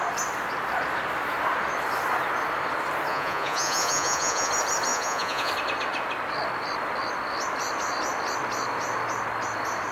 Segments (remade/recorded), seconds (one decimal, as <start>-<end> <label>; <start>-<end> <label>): 0.0-3.1 recorded; 3.1-4.5 remade; 4.5-4.9 recorded; 4.9-5.5 remade; 5.5-9.9 recorded